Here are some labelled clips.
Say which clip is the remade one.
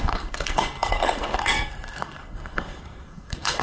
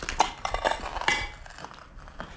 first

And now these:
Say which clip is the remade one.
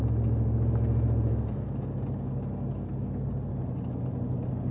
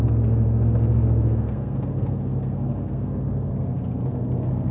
second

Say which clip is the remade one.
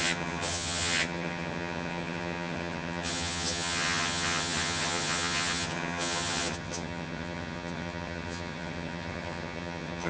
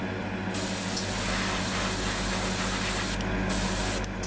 first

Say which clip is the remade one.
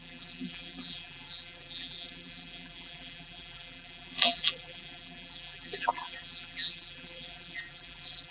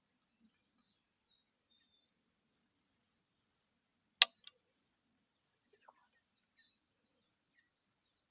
first